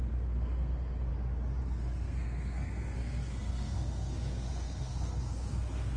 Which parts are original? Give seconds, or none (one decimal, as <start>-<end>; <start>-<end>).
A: 1.1-1.6